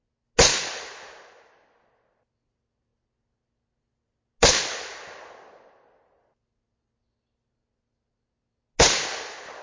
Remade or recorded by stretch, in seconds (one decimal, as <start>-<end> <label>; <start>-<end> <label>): 0.0-9.6 recorded

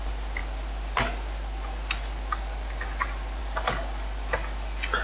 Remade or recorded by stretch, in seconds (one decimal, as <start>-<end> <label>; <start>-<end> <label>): 0.0-5.0 recorded